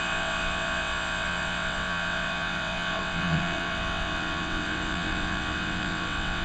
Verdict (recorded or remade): remade